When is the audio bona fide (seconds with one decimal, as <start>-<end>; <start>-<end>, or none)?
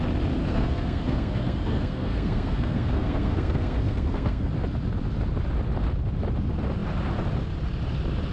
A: 0.0-0.4; 4.5-8.3